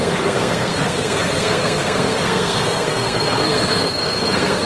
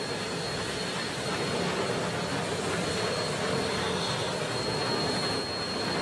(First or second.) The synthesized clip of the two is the first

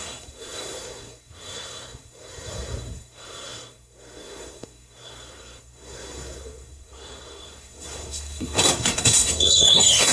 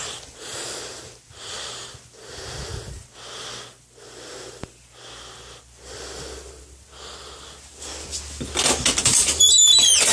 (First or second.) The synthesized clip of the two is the first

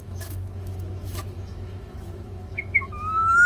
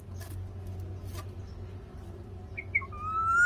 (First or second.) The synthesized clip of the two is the first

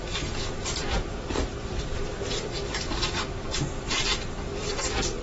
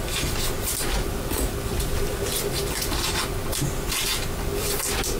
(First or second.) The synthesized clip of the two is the first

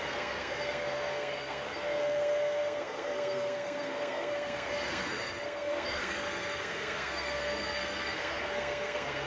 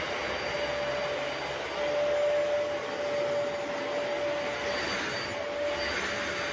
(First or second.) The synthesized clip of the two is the first